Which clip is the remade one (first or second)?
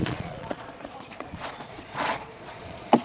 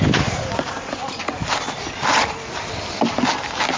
first